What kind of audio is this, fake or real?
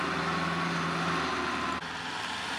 real